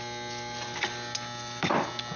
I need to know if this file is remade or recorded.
recorded